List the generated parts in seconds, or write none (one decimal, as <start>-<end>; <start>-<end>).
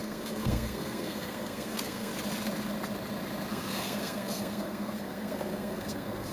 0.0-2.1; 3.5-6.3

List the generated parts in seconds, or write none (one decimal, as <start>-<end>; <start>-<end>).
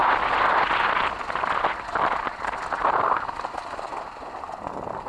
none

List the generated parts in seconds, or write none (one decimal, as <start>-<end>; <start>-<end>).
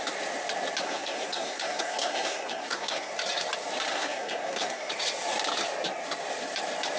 0.8-3.1; 3.9-4.9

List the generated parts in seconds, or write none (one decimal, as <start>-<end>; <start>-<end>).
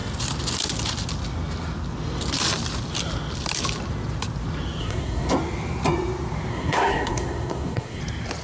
4.8-5.3; 6.5-8.0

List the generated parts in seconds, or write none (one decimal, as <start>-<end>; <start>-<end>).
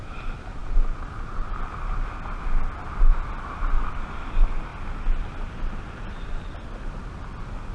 none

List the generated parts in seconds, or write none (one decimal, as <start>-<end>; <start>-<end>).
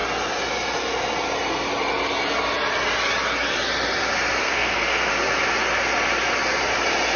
4.4-5.1